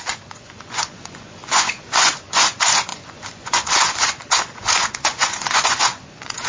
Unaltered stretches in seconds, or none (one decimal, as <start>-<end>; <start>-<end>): none